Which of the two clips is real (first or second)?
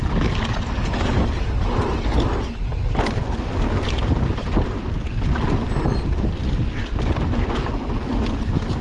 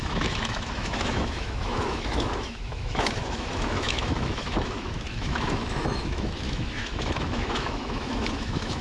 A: first